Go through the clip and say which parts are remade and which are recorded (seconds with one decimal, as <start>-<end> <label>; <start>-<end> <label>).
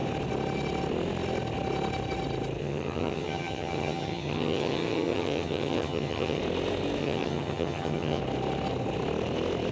0.0-2.6 recorded; 2.6-6.4 remade; 6.4-7.0 recorded; 7.0-8.2 remade; 8.2-9.7 recorded